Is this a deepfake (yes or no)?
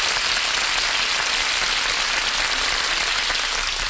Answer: no